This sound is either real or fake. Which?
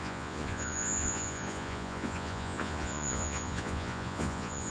fake